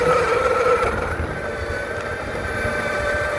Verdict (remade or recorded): recorded